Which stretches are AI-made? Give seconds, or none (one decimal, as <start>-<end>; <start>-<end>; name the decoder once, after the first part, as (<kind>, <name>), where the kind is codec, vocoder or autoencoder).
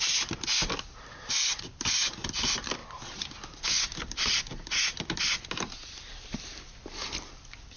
none